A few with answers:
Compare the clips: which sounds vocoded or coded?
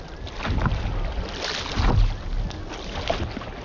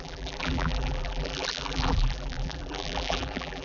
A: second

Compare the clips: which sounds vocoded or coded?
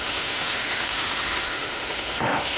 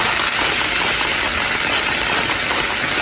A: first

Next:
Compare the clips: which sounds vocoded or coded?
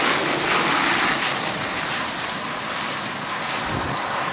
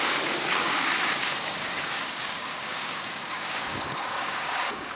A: second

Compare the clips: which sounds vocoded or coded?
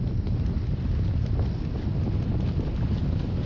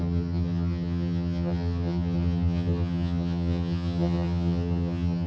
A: second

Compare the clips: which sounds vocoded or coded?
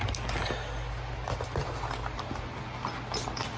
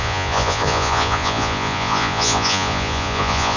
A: second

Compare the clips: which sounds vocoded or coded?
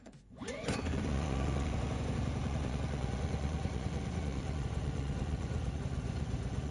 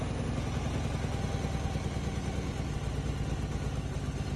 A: first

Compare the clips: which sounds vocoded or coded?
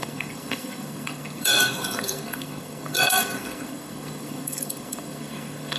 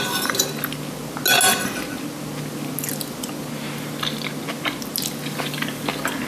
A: first